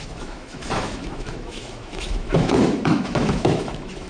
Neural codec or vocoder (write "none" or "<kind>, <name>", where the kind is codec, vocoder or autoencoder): autoencoder, DAC-VAE